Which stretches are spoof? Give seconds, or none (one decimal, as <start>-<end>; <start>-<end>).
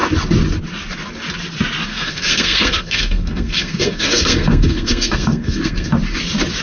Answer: 1.9-5.9